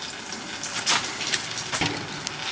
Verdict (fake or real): real